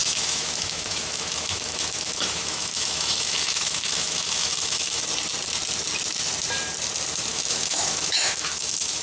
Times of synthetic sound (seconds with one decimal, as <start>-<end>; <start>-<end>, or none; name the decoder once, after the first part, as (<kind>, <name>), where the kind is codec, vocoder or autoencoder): 0.0-5.0 (autoencoder, DAC-VAE); 7.3-9.0